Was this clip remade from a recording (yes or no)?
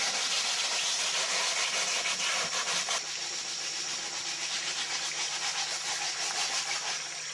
no